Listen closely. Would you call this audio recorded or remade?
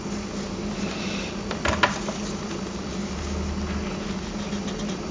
recorded